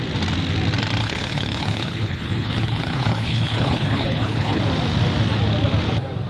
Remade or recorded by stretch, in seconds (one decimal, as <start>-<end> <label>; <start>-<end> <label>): 0.0-1.0 recorded; 1.0-4.6 remade; 4.6-6.3 recorded